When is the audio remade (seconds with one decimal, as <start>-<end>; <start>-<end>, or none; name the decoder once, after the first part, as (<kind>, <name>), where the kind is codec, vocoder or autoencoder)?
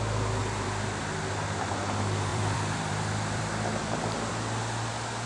0.4-1.0 (vocoder, BigVGAN v2); 2.3-4.3